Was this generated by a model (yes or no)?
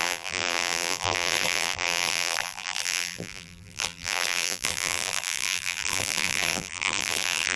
yes